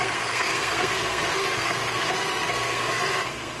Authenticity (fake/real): fake